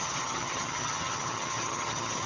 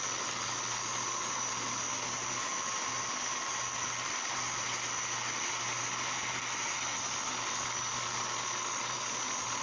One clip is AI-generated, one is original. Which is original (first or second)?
second